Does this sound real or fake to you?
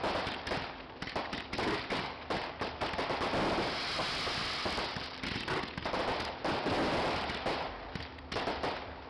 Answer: real